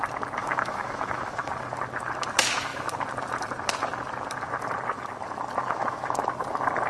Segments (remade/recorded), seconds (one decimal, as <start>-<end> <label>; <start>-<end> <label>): 0.0-0.4 recorded; 0.4-1.5 remade; 1.5-5.6 recorded; 5.6-6.2 remade; 6.2-6.9 recorded